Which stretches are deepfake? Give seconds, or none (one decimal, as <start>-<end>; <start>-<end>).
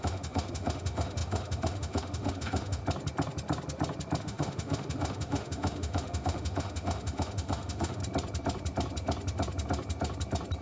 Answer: 0.0-2.8; 4.2-8.0